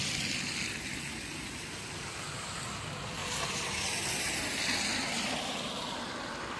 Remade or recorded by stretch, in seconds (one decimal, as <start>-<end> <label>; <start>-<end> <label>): 0.0-6.6 recorded